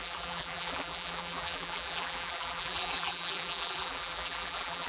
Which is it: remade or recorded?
remade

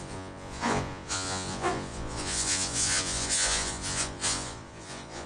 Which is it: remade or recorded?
remade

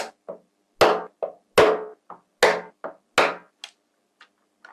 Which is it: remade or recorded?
recorded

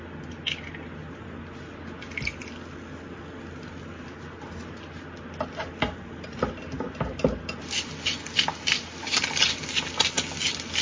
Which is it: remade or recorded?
recorded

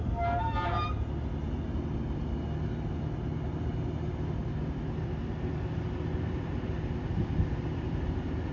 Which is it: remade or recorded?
recorded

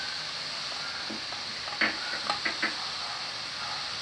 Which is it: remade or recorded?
recorded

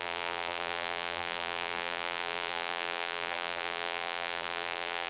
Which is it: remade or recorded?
remade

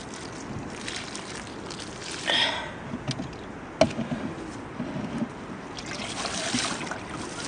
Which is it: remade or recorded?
recorded